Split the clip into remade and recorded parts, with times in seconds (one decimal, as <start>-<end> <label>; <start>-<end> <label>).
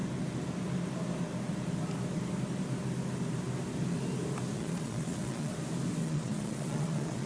0.0-4.5 recorded; 4.5-5.5 remade; 5.5-6.0 recorded; 6.0-7.3 remade